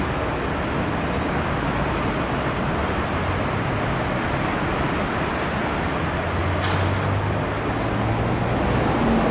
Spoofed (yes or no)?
no